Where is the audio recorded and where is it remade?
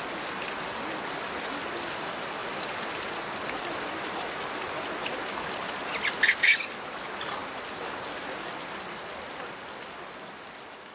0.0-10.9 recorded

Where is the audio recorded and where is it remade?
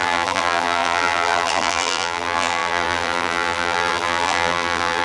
0.0-5.0 remade